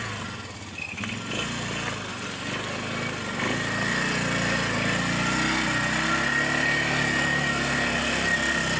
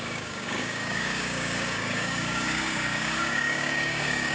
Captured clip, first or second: first